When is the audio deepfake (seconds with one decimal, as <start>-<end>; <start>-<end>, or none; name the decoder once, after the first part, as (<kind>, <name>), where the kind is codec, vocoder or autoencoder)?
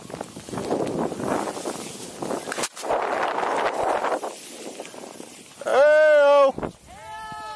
none